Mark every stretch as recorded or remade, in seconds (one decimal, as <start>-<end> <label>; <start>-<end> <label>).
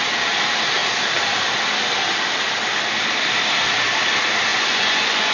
0.0-4.5 recorded; 4.5-5.3 remade